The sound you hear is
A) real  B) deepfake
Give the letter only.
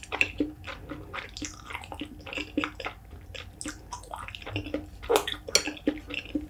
A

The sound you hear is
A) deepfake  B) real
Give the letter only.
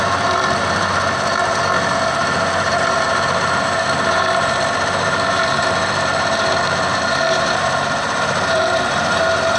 A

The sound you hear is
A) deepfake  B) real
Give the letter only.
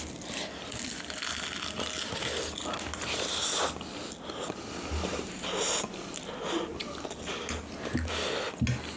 B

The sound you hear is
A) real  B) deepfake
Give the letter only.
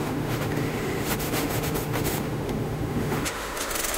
B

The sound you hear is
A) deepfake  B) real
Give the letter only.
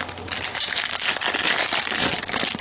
B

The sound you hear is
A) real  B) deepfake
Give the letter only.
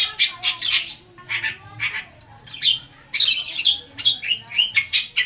A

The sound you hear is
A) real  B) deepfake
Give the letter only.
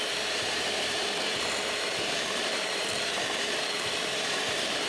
B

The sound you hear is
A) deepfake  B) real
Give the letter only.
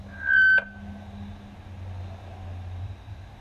B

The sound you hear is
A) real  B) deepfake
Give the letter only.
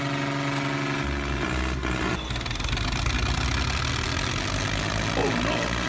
A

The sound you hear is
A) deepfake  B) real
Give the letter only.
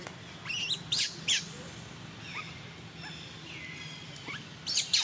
B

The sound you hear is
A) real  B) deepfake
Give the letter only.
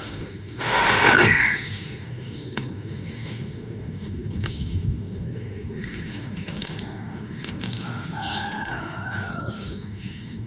B